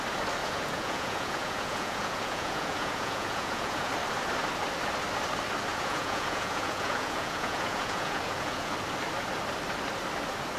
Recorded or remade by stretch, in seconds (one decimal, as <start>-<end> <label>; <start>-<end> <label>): 0.0-0.4 recorded; 0.4-3.9 remade; 3.9-5.7 recorded; 5.7-8.7 remade; 8.7-10.6 recorded